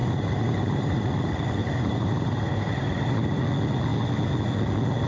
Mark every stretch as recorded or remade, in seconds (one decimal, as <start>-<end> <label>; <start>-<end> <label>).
0.0-1.0 remade; 1.0-1.6 recorded; 1.6-3.4 remade; 3.4-5.1 recorded